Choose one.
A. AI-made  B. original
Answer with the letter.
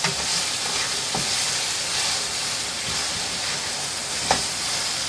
B